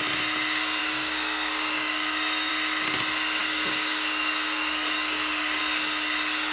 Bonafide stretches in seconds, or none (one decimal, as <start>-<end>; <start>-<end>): 0.0-0.8; 2.5-3.4; 5.6-6.5